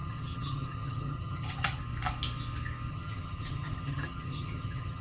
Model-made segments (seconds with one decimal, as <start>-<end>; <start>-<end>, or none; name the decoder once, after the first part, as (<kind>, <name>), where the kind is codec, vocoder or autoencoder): 0.0-1.8 (vocoder, HiFi-GAN); 2.9-5.0